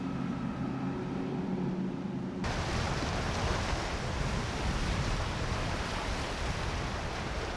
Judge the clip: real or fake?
real